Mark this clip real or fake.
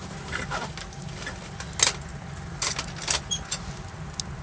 real